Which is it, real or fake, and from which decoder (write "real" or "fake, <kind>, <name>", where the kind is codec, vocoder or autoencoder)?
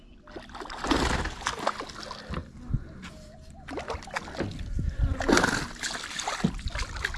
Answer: real